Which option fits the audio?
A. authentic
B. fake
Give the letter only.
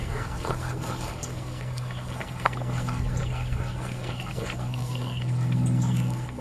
B